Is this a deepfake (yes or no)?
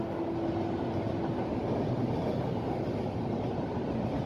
no